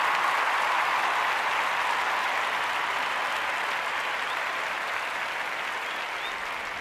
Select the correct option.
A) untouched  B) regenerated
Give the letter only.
A